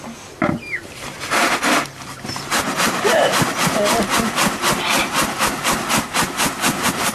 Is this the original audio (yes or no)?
yes